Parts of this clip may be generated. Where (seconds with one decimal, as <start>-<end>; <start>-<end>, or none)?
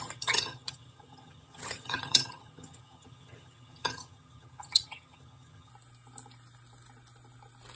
0.0-5.7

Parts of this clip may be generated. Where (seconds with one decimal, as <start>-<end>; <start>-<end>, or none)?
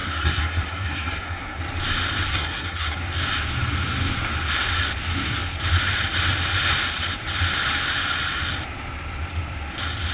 0.0-1.6; 2.3-3.0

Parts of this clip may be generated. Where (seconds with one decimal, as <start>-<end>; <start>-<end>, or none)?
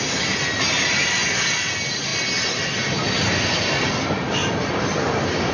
none